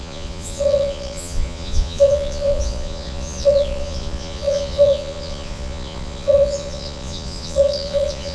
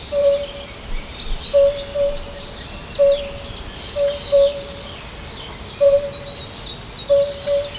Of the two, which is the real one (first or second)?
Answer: second